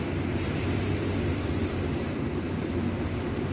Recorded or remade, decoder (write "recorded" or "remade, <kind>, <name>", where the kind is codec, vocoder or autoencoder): recorded